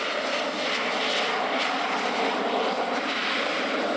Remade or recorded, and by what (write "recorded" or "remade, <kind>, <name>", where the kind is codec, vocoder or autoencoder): recorded